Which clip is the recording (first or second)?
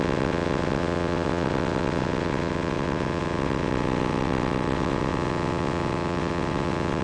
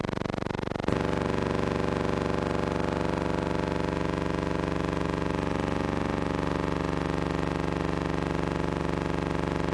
second